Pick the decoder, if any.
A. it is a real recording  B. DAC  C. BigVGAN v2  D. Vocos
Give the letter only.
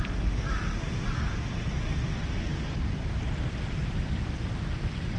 A